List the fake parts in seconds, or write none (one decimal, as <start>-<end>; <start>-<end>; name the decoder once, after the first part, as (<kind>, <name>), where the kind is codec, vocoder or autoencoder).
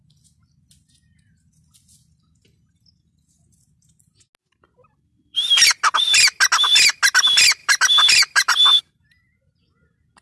4.8-5.5 (vocoder, BigVGAN v2); 7.6-8.8